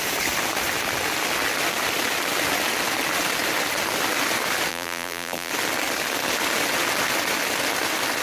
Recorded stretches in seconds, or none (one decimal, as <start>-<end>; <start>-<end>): 0.0-4.7; 5.5-8.2